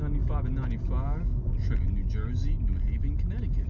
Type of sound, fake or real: real